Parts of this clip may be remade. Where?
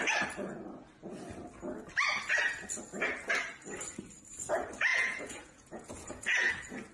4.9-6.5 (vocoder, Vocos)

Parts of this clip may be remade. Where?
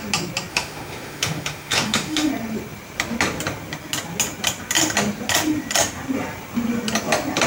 0.5-2.3 (autoencoder, DAC-VAE)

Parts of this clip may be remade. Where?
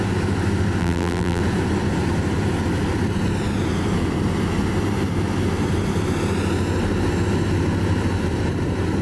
0.8-1.4 (vocoder, BigVGAN v2)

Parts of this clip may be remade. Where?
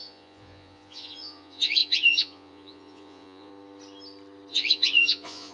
0.0-3.5 (vocoder, Vocos); 4.5-5.5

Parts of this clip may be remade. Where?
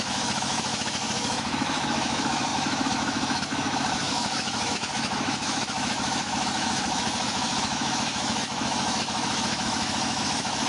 0.0-10.7 (autoencoder, DAC-VAE)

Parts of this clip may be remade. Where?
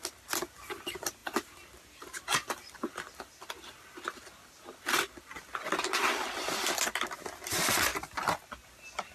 none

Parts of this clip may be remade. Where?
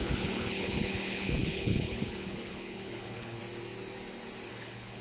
0.0-3.4 (codec, HILCodec); 4.5-5.0